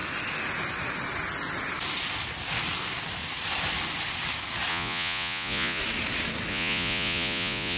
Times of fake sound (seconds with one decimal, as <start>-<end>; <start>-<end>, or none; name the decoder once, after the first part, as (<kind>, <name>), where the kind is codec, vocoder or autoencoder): 4.7-5.8 (vocoder, Vocos); 6.5-7.8